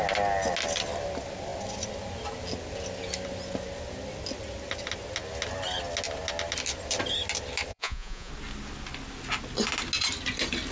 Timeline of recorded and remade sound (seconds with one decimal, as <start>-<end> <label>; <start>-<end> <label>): 0.0-7.7 recorded; 7.7-8.3 remade; 8.3-10.7 recorded